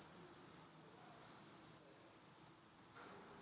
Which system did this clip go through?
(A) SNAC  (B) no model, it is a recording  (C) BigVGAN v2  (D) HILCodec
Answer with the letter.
B